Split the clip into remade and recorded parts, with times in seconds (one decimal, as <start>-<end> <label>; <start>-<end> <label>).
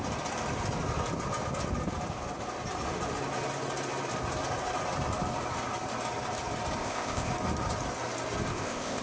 0.0-6.8 recorded; 6.8-7.3 remade; 7.3-8.5 recorded; 8.5-9.0 remade